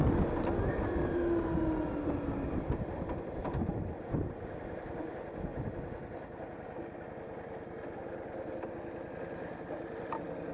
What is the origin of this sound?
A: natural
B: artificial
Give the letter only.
A